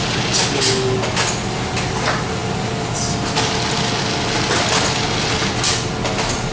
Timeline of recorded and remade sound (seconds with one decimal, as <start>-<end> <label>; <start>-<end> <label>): 0.0-6.5 recorded